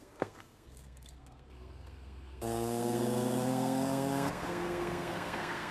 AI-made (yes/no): yes